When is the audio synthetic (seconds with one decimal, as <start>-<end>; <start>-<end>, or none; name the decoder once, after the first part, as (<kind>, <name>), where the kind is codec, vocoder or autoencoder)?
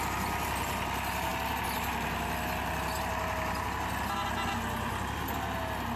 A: none